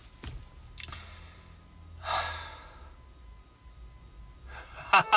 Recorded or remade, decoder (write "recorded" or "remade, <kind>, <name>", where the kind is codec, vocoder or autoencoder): recorded